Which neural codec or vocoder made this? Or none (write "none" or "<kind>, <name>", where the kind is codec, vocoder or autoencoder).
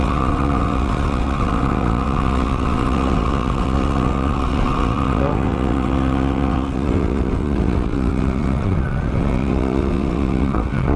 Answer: vocoder, WaveNeXt